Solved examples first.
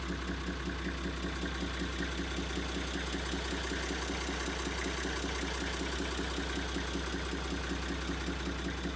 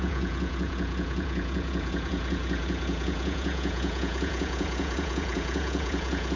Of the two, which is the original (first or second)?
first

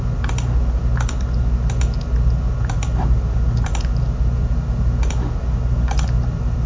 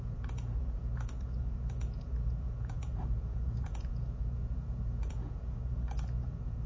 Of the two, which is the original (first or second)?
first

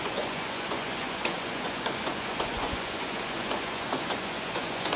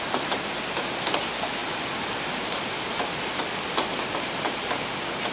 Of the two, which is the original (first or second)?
second